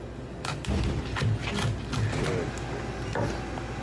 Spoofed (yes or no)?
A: no